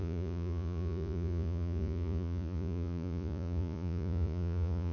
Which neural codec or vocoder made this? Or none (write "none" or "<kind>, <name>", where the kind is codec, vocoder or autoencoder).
vocoder, Vocos